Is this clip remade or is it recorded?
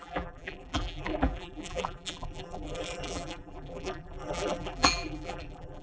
remade